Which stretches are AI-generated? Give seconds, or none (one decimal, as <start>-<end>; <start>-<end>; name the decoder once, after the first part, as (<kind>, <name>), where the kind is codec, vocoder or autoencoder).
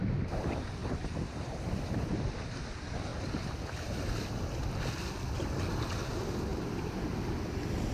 0.8-2.1 (vocoder, BigVGAN v2); 3.1-4.6; 6.5-7.4